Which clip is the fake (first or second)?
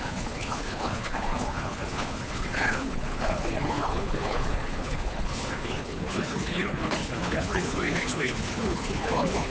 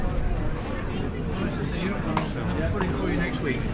first